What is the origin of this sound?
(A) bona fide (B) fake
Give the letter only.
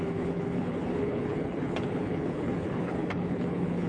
B